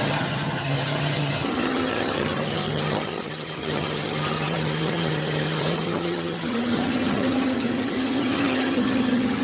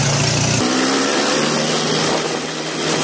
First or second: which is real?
second